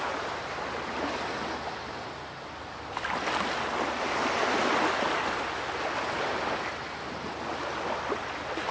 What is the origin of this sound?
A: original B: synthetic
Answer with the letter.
A